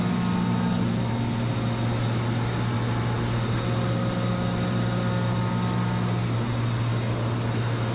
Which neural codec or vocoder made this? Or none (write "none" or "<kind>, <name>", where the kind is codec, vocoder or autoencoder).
none